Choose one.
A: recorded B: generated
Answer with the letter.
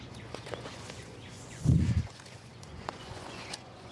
B